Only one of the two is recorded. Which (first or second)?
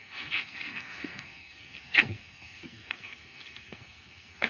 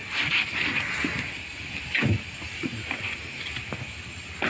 second